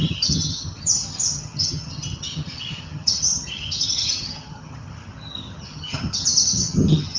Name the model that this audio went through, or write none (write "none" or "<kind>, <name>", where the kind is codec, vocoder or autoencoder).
vocoder, HiFi-GAN